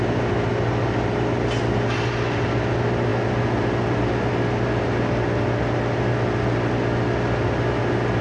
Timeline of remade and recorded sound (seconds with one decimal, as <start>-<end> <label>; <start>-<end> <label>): 0.0-8.2 recorded